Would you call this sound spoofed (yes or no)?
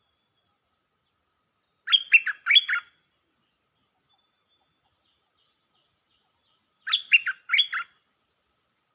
no